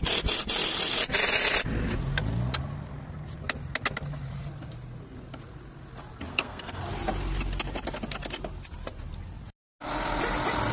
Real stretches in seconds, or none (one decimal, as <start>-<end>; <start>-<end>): 0.0-6.3; 6.8-10.7